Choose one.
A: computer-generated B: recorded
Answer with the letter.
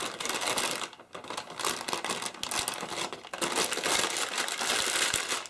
B